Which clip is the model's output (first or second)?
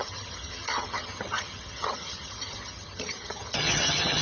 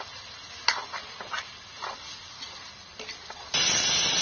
first